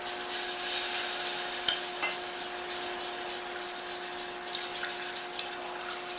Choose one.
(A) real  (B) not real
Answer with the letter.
A